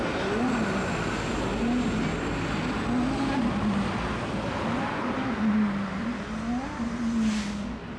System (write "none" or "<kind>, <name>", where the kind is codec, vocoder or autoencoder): none